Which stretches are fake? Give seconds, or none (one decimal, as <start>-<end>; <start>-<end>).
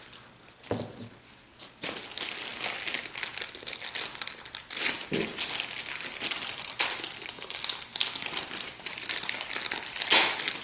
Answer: none